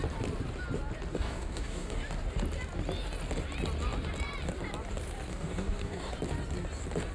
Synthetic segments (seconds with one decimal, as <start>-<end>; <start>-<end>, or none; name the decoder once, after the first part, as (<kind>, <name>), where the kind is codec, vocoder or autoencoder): 1.1-2.0 (codec, DAC); 5.3-6.1